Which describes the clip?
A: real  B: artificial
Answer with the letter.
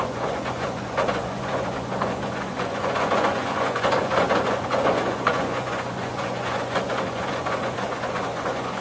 B